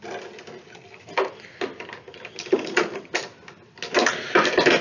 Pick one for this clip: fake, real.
real